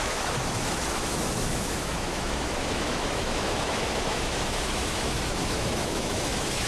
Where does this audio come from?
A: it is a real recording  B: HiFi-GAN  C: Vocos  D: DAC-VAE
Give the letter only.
D